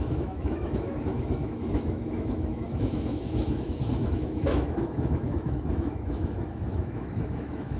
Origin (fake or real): fake